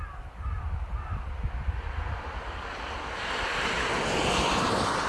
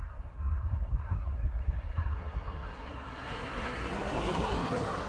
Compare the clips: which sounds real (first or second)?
first